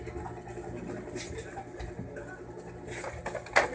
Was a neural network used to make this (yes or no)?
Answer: no